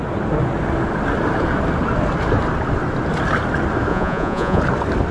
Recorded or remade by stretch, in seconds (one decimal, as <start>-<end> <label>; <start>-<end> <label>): 0.0-3.9 recorded; 3.9-4.6 remade; 4.6-5.1 recorded